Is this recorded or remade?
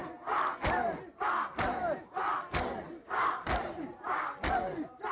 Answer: recorded